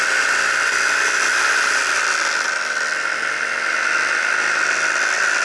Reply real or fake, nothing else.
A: fake